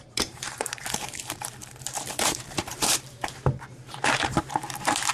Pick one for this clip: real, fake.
fake